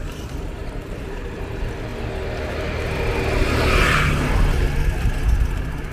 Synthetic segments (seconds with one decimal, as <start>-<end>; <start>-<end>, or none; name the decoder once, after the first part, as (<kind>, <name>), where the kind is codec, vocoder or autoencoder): 0.6-1.2 (vocoder, BigVGAN v2)